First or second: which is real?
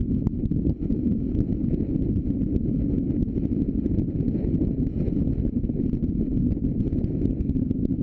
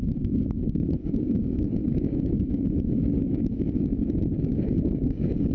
first